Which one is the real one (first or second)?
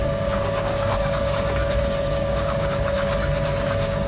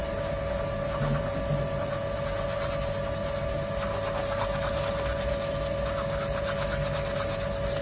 second